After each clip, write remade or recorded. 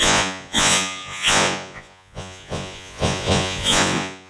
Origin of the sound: remade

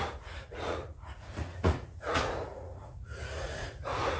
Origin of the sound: remade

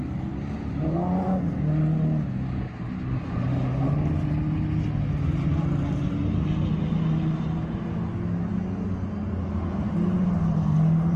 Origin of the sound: recorded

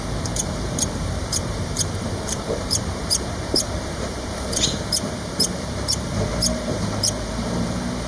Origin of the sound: remade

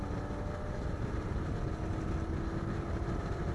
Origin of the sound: recorded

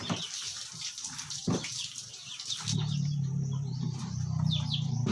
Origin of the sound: remade